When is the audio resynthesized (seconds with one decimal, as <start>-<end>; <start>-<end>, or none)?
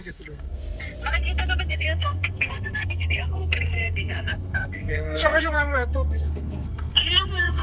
0.0-0.6; 1.7-7.6